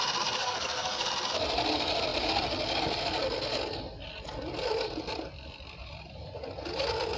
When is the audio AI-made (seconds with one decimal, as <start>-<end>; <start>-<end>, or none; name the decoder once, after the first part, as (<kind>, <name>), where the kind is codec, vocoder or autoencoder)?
0.4-1.1 (codec, SNAC)